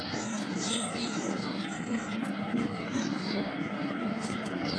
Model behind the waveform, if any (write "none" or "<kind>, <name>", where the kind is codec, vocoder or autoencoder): codec, SNAC